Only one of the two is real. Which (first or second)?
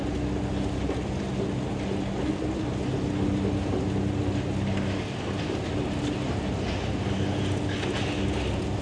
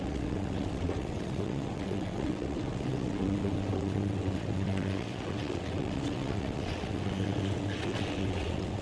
first